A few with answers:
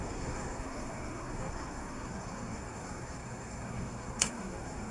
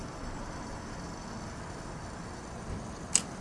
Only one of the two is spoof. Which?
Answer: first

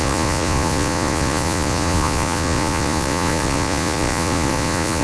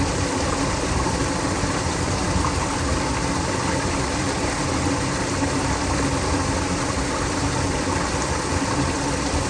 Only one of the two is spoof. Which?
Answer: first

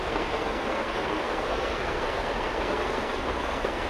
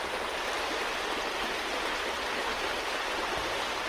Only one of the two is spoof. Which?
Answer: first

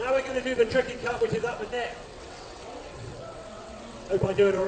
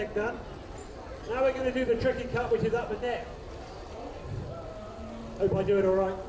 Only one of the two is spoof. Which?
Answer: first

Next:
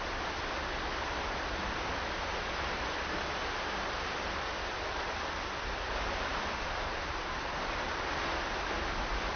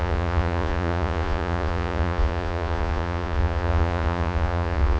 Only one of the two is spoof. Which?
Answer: second